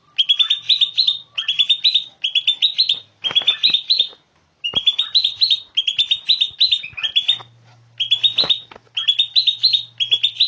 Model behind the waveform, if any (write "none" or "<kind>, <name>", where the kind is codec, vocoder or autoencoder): none